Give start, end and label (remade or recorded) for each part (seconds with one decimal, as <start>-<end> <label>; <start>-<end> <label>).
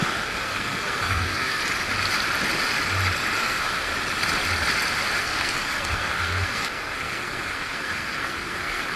0.0-1.6 remade; 1.6-3.4 recorded; 3.4-3.9 remade; 3.9-5.2 recorded; 5.2-9.0 remade